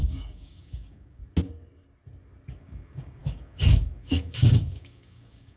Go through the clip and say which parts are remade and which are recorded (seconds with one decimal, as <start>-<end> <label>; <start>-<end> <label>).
0.0-1.2 remade; 1.2-2.6 recorded; 2.6-5.6 remade